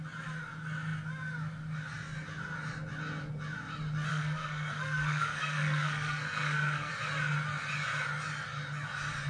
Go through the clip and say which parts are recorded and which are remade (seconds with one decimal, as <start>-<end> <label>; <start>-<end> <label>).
0.0-4.1 recorded; 4.1-6.9 remade; 6.9-9.3 recorded